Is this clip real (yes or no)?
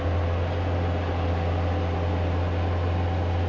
yes